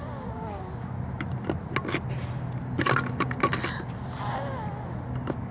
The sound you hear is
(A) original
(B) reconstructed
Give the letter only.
A